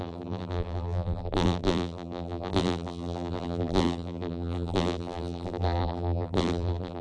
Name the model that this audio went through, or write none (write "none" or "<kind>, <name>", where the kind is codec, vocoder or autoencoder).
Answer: vocoder, BigVGAN v2